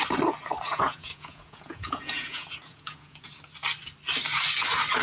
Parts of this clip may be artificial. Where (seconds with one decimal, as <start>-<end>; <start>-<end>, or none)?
0.7-3.3